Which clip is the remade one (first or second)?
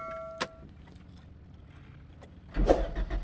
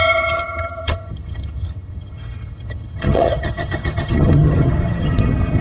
second